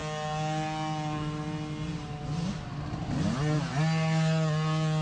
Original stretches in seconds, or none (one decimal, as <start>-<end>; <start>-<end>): 0.0-5.0